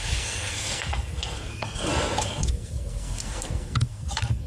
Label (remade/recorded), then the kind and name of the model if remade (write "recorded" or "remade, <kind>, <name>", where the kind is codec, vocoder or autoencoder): remade, codec, SNAC